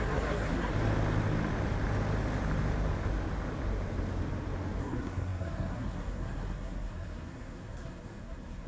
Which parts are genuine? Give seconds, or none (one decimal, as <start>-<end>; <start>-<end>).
0.7-4.8